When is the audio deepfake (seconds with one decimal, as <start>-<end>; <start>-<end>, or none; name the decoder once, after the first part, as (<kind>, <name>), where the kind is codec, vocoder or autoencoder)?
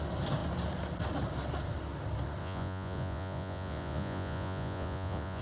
2.4-5.4 (vocoder, Vocos)